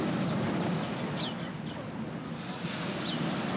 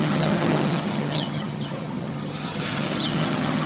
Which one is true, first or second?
first